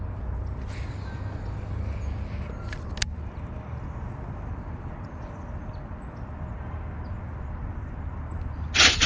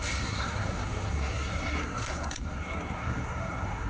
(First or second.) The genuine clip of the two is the first